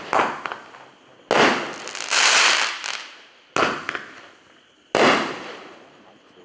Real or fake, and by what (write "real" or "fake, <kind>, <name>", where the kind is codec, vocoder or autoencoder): real